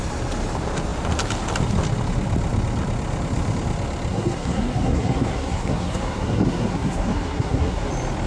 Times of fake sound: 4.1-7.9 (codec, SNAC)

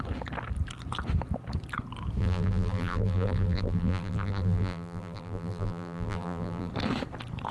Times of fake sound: 2.2-6.7 (vocoder, BigVGAN v2)

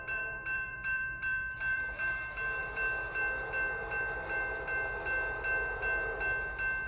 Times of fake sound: 0.0-2.6 (vocoder, BigVGAN v2)

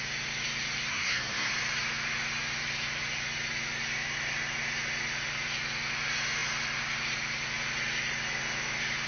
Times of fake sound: 0.9-1.5 (codec, SNAC)

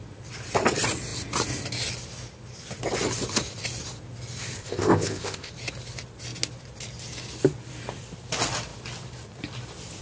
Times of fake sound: 4.6-5.5 (codec, ZipCodec)

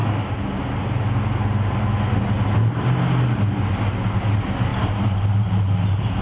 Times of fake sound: 4.7-6.2 (vocoder, BigVGAN v2)

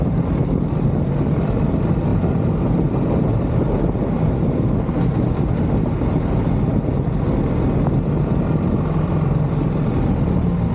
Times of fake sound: none

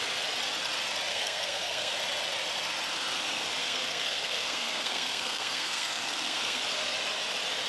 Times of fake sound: 1.1-1.9 (codec, SNAC); 3.6-6.6